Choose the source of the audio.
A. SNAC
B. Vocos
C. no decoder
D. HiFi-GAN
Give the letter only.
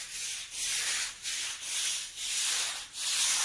C